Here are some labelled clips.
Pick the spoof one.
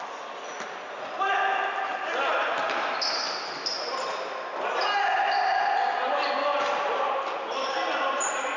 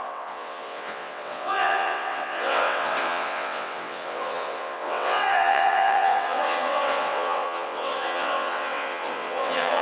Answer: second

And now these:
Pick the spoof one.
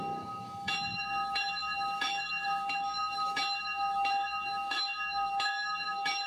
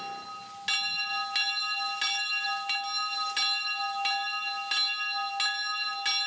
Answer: first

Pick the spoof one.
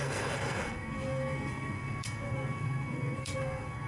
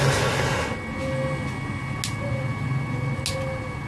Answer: first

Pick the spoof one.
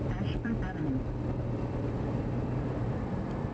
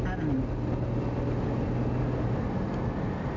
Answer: first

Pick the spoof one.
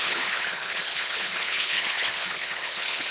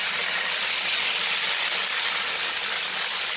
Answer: first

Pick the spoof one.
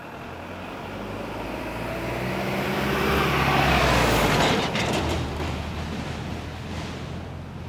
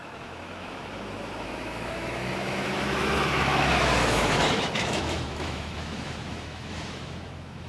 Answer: second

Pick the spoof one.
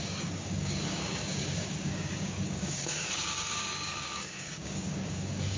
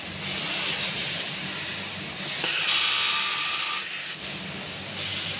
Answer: first